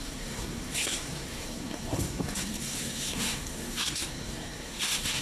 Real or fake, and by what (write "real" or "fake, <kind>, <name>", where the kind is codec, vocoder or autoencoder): fake, codec, SNAC